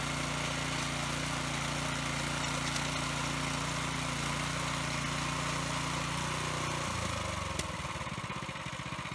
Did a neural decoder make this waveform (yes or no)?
no